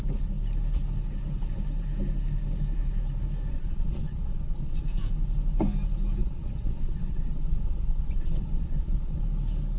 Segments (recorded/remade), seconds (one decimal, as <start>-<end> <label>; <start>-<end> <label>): 0.0-3.5 recorded; 3.5-4.8 remade; 4.8-6.2 recorded; 6.2-9.2 remade; 9.2-9.8 recorded